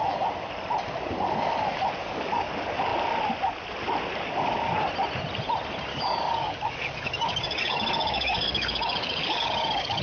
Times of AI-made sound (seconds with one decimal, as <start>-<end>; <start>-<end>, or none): 2.0-2.5; 5.9-10.0